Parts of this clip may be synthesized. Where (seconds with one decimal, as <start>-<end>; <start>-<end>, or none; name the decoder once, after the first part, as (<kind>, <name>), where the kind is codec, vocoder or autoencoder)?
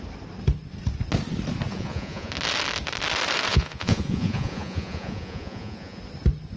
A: 1.7-2.3 (vocoder, Vocos); 3.5-6.0